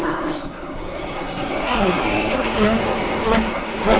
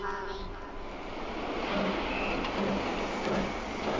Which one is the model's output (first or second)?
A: first